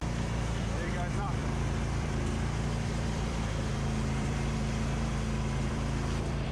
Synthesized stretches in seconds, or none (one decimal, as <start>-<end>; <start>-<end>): 0.0-6.5